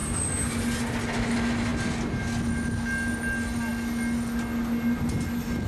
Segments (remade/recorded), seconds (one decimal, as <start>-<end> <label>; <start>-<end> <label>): 0.0-5.7 recorded